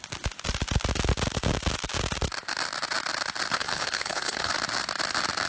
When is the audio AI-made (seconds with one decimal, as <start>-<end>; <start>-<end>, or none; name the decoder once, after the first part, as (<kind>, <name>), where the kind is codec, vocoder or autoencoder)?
3.5-4.5 (codec, HILCodec)